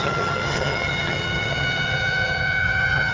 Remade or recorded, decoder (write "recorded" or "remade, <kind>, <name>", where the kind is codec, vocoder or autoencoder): remade, vocoder, HiFi-GAN